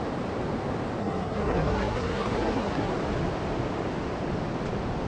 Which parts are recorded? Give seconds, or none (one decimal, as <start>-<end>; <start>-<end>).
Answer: 0.0-1.0; 2.9-5.1